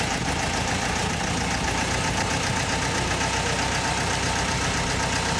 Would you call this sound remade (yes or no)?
no